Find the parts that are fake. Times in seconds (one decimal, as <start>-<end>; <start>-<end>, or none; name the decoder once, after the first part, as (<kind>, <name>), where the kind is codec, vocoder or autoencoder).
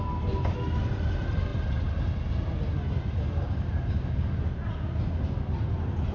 none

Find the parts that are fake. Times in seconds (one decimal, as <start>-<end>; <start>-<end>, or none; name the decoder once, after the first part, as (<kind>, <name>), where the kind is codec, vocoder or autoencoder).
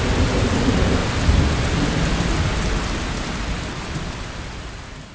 none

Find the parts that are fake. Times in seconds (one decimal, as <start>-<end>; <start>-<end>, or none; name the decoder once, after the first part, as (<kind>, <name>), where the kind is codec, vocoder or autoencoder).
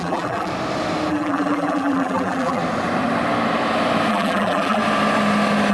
0.0-0.5 (vocoder, BigVGAN v2); 1.1-2.6; 4.1-4.8